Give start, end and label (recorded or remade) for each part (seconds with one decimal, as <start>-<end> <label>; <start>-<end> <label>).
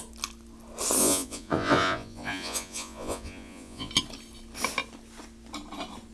0.0-1.0 recorded; 1.0-3.9 remade; 3.9-6.1 recorded